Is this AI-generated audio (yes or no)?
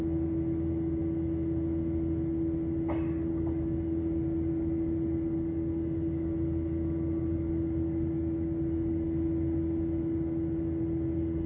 no